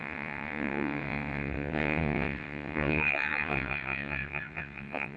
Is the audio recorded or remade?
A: remade